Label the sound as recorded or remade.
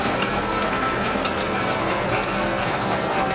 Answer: remade